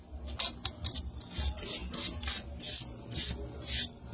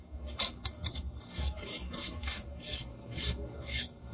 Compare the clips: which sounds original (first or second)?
first